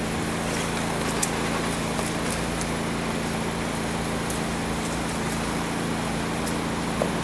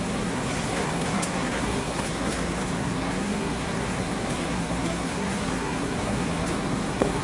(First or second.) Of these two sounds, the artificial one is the second